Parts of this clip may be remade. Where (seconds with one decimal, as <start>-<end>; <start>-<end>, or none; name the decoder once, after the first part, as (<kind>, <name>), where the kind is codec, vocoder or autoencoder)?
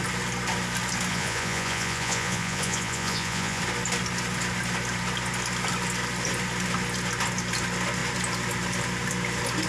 1.1-3.6 (vocoder, Vocos)